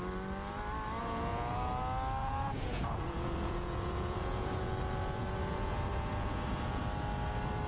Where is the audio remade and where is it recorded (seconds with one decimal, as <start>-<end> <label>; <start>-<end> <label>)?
0.0-1.0 recorded; 1.0-1.8 remade; 1.8-2.2 recorded; 2.2-6.8 remade; 6.8-7.7 recorded

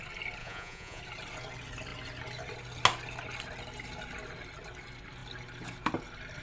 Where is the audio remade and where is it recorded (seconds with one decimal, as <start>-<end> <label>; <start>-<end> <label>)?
0.0-0.4 recorded; 0.4-1.0 remade; 1.0-6.4 recorded

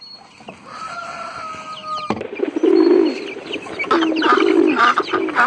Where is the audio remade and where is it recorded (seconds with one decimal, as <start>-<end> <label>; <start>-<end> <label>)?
0.0-5.5 recorded

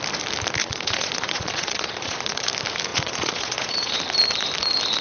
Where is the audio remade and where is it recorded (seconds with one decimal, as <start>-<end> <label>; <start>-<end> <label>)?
0.0-0.6 recorded; 0.6-2.5 remade; 2.5-2.9 recorded; 2.9-4.0 remade; 4.0-5.0 recorded

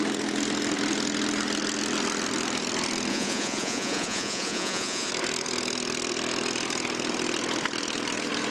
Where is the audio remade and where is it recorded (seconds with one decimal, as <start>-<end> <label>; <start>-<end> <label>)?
0.0-3.1 recorded; 3.1-5.1 remade; 5.1-8.5 recorded

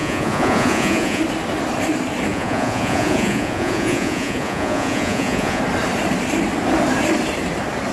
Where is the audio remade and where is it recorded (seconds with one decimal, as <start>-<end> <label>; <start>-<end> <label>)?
0.0-1.2 remade; 1.2-2.3 recorded; 2.3-5.6 remade; 5.6-7.9 recorded

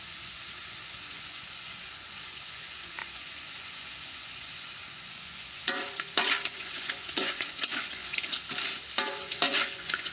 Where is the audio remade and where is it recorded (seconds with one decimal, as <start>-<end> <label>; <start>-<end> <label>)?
0.0-8.4 remade; 8.4-9.1 recorded; 9.1-10.1 remade